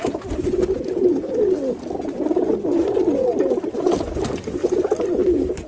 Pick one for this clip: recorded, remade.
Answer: recorded